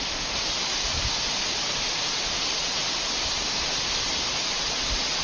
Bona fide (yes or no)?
yes